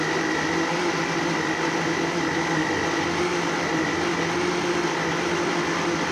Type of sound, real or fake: real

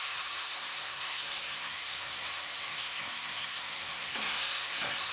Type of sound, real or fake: fake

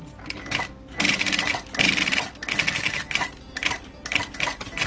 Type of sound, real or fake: real